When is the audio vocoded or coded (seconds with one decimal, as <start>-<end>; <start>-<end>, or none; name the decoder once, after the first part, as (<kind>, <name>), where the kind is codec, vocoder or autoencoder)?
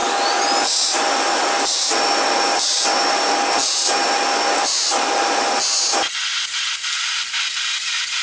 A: none